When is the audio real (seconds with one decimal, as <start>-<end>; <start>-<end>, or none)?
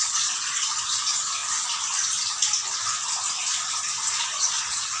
1.4-4.1